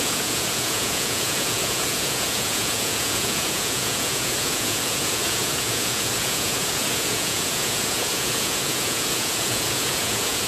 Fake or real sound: fake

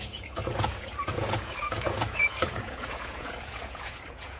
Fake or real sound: fake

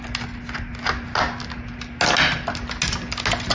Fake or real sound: real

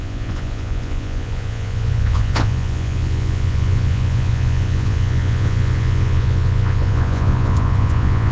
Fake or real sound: fake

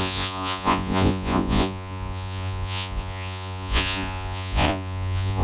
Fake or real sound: fake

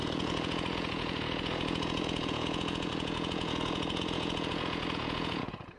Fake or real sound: fake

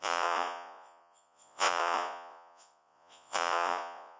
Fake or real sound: fake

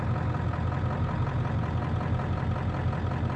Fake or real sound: real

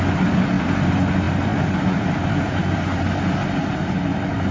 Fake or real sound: real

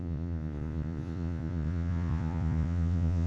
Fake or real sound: fake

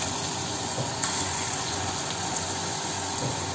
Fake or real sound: fake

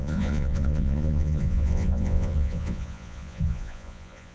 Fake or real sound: fake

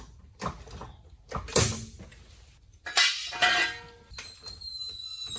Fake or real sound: real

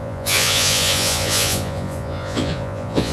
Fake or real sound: fake